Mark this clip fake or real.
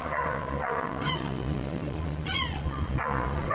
fake